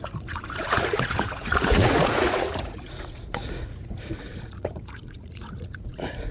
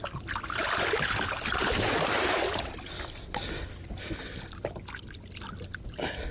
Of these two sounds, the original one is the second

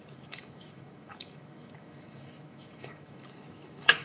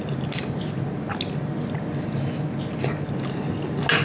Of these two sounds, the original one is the second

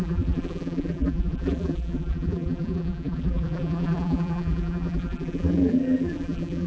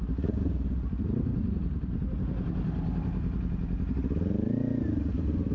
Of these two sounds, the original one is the second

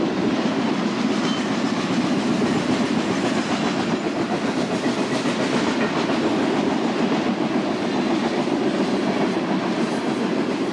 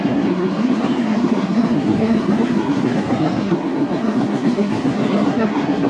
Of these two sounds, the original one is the first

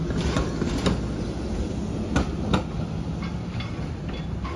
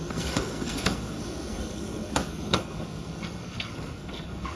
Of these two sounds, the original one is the first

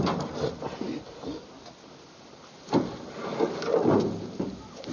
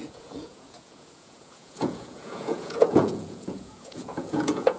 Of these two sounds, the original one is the first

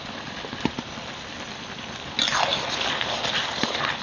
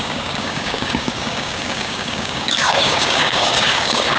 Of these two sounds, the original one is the first